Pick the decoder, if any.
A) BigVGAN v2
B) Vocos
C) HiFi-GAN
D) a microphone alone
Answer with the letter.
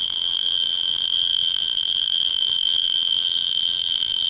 A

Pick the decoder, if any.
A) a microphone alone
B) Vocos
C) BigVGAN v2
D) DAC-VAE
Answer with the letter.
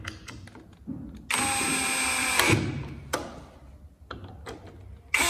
A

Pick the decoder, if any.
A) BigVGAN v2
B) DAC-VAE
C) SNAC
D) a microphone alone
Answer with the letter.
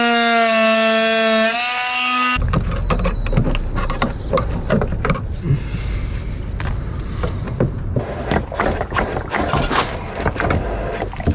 D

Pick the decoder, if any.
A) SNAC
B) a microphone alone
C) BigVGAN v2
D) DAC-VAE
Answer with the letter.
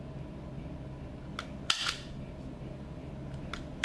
B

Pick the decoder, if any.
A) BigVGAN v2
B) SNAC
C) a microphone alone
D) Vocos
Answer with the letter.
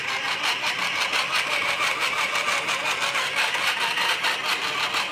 C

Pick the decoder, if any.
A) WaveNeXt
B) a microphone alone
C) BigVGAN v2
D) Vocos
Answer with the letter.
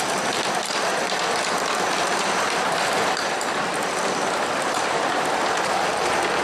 C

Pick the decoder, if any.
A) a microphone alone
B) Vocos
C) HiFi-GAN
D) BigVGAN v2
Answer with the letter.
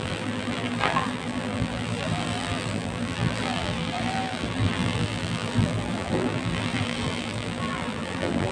D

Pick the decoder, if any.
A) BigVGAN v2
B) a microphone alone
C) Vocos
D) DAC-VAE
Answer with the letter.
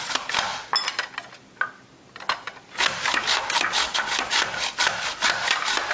B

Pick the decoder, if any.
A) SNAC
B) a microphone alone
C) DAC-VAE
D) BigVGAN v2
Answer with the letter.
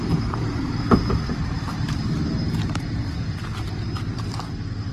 D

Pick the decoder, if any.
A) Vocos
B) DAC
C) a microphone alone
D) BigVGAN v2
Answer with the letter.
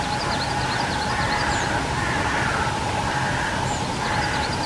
C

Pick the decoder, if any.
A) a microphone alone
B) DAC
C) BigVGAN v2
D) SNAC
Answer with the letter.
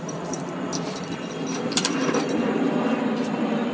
C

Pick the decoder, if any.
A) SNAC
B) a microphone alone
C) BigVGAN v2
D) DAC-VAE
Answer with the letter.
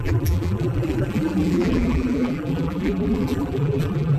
C